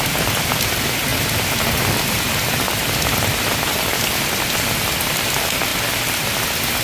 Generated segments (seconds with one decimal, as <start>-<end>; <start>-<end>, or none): none